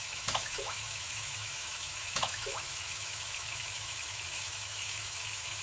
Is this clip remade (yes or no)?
yes